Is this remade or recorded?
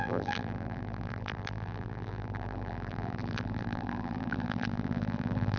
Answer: remade